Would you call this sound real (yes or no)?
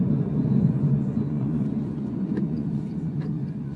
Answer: no